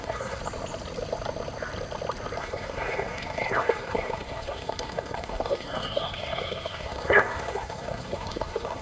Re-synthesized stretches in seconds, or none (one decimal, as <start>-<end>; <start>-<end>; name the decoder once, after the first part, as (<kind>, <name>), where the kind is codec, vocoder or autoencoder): 0.0-0.4 (codec, SNAC); 2.4-8.8